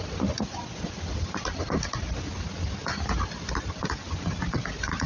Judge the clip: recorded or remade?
recorded